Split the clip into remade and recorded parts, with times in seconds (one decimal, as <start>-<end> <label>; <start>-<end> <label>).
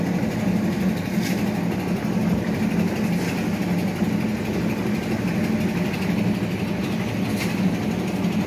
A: 0.0-8.5 recorded